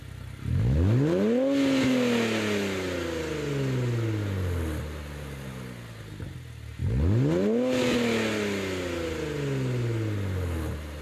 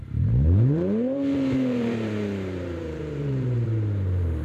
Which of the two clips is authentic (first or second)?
first